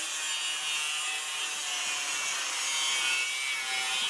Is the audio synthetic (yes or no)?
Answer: no